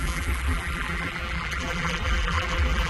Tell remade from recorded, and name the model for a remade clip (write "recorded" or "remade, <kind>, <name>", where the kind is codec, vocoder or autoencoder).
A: remade, vocoder, BigVGAN v2